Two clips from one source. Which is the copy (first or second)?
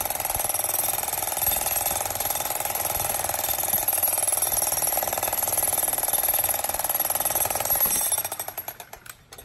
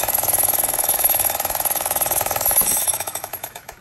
second